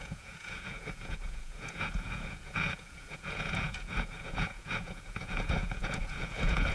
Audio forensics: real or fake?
fake